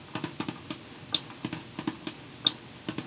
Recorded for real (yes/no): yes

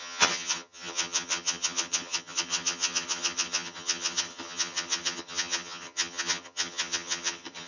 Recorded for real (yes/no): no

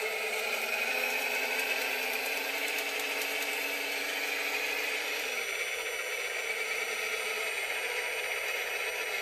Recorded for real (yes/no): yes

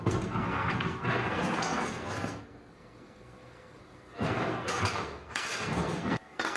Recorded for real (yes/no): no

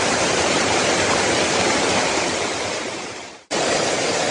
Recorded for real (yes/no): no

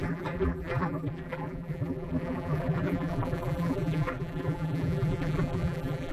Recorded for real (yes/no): no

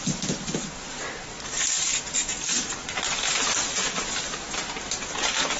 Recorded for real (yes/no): yes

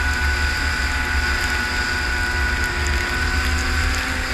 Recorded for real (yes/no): yes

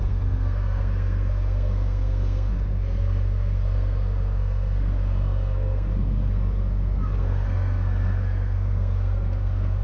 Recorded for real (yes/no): no